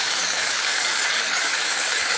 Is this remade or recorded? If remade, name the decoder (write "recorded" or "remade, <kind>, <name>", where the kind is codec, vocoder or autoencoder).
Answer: remade, codec, DAC